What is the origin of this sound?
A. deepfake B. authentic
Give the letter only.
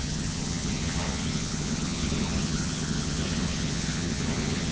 A